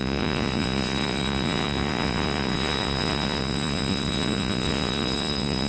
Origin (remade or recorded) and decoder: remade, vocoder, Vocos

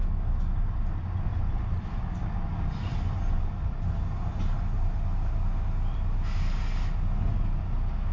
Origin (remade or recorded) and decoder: recorded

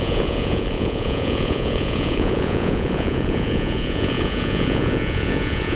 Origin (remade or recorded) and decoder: remade, vocoder, Vocos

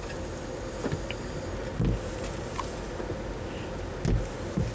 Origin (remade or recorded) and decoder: recorded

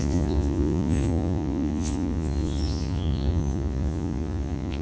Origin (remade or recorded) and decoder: remade, vocoder, Vocos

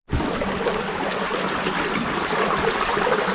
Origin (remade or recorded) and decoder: recorded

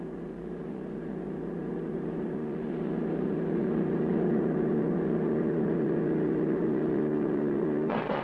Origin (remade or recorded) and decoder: remade, vocoder, Vocos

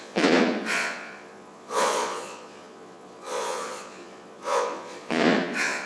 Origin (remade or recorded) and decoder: remade, vocoder, Vocos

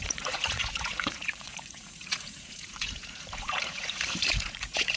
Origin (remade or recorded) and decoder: remade, vocoder, Vocos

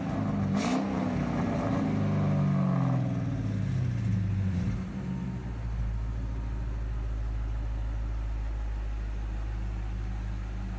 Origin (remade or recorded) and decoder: recorded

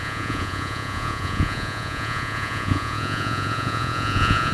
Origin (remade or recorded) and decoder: remade, vocoder, Vocos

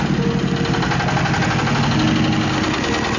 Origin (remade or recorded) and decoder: recorded